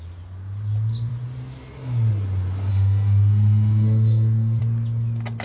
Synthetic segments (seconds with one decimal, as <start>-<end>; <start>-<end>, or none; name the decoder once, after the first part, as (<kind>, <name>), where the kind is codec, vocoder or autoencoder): 2.7-4.6 (autoencoder, DAC-VAE)